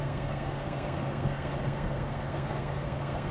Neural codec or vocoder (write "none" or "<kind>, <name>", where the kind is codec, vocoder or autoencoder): codec, SNAC